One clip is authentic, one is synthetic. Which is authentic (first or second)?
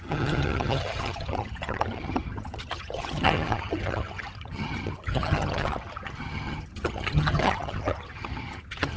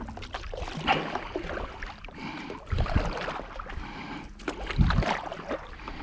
second